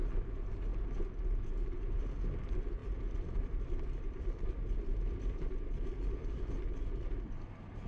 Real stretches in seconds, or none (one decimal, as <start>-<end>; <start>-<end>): 0.0-2.8; 6.6-7.9